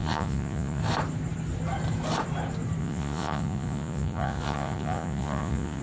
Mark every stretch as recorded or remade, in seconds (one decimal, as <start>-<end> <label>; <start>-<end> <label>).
0.0-0.8 remade; 0.8-2.8 recorded; 2.8-5.8 remade